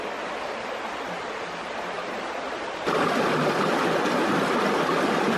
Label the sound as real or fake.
real